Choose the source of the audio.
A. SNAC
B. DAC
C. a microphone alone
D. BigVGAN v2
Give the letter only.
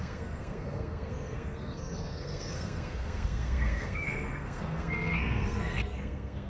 A